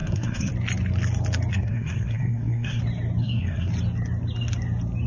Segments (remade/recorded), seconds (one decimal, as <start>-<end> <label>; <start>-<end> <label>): 0.0-0.5 remade; 0.5-1.5 recorded; 1.5-2.8 remade; 2.8-3.2 recorded; 3.2-3.7 remade; 3.7-5.1 recorded